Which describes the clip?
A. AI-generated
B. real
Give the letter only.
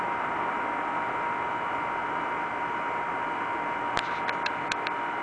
B